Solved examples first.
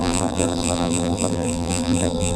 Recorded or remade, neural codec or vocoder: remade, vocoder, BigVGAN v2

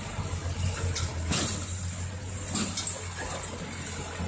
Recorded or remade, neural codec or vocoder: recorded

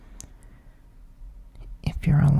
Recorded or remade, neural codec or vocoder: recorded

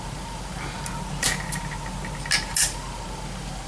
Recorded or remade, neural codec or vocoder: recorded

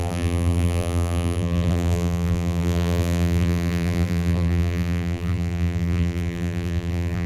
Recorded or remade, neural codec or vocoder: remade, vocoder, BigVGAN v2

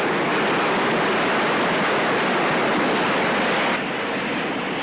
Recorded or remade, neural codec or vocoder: recorded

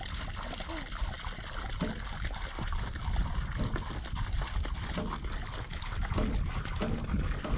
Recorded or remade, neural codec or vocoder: recorded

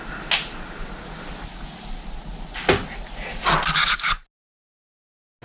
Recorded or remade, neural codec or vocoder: recorded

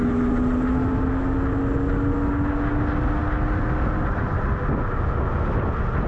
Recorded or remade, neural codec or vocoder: recorded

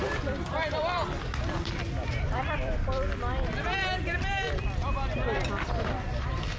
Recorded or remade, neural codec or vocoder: remade, vocoder, BigVGAN v2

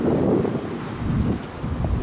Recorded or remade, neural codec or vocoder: recorded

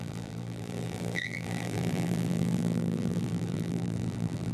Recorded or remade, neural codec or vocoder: remade, vocoder, BigVGAN v2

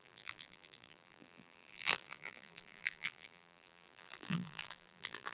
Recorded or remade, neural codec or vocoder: remade, vocoder, BigVGAN v2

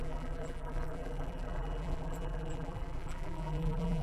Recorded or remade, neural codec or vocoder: remade, vocoder, BigVGAN v2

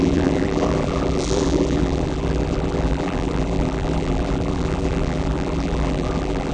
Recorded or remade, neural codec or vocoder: remade, vocoder, BigVGAN v2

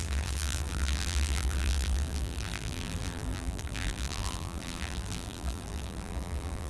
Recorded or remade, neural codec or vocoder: remade, vocoder, BigVGAN v2